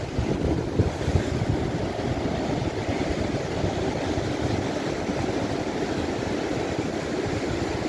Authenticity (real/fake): real